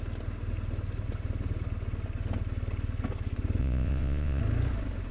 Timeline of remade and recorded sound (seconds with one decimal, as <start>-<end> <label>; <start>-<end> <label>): 0.0-3.6 recorded; 3.6-4.4 remade; 4.4-5.1 recorded